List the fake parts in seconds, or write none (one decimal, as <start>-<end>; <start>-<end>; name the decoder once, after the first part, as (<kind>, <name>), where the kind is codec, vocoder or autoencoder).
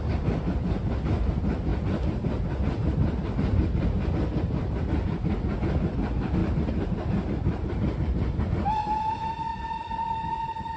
6.4-10.8 (vocoder, BigVGAN v2)